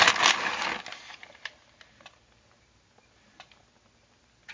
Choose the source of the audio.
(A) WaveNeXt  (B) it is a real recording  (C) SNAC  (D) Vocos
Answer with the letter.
B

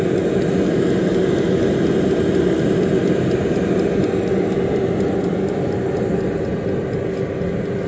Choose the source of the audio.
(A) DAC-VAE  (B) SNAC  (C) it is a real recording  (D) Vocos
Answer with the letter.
C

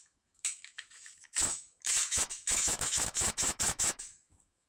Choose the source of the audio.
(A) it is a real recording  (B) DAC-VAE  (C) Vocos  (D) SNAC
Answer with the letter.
B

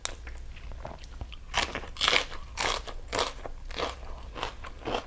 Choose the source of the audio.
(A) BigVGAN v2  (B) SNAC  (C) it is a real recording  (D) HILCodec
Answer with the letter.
C